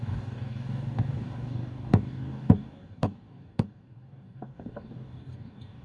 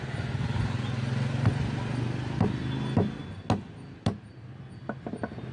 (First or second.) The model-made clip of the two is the first